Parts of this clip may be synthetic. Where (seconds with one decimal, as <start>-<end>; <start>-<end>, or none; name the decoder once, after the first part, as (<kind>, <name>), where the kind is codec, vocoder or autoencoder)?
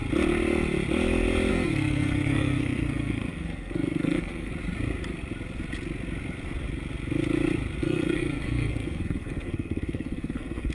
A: 1.5-4.5 (codec, SNAC); 7.8-10.7